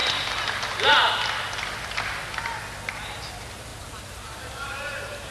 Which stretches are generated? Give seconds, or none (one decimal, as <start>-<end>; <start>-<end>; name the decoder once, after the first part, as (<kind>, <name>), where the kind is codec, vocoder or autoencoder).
3.7-5.3 (vocoder, BigVGAN v2)